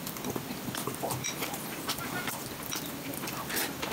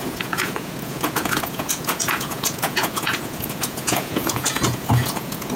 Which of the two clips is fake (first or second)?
second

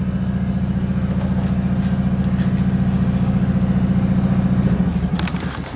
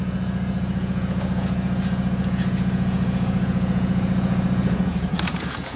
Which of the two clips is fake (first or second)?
second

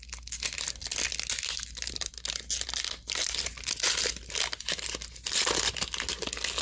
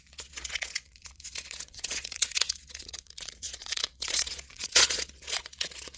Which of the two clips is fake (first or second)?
second